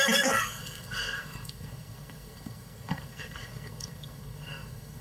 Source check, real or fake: fake